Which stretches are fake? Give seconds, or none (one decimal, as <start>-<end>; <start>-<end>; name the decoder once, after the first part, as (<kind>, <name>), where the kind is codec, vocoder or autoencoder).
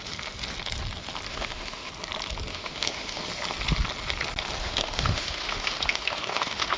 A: 1.3-1.9 (autoencoder, DAC-VAE); 2.5-3.2; 4.6-6.8